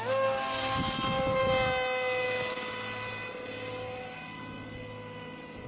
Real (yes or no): yes